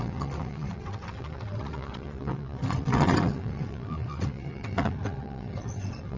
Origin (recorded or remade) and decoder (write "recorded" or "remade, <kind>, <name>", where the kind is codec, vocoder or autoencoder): remade, vocoder, WaveNeXt